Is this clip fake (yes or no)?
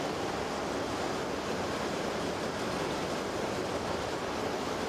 no